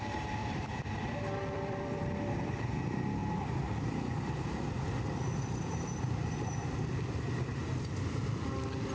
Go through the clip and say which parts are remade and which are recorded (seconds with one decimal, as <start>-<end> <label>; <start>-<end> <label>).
0.0-0.4 recorded; 0.4-2.1 remade; 2.1-8.9 recorded